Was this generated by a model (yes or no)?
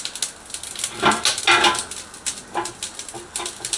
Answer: no